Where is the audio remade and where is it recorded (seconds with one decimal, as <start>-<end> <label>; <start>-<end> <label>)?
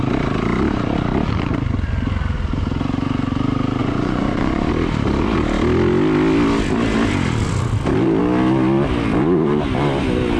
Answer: 0.0-3.8 recorded; 3.8-4.7 remade; 4.7-10.4 recorded